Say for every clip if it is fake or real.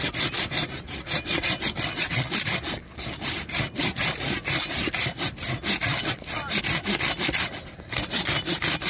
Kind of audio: real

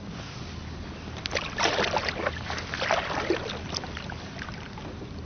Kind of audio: real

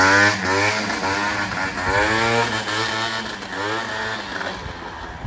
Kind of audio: real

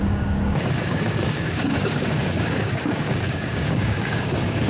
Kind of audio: fake